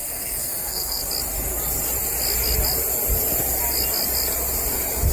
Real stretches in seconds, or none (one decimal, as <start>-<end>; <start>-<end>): 1.0-5.1